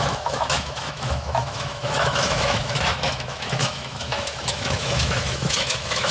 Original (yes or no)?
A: no